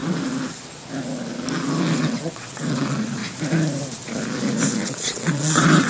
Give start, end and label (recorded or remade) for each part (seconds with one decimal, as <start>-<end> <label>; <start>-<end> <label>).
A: 0.0-1.9 recorded; 1.9-3.2 remade; 3.2-4.8 recorded; 4.8-5.9 remade

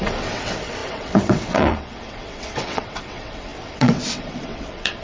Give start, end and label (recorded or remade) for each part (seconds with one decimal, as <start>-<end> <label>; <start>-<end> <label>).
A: 0.0-5.0 remade